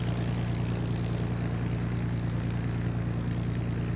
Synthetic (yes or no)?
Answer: no